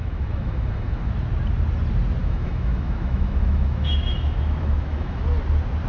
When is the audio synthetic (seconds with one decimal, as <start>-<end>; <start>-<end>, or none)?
0.0-1.1; 2.2-5.2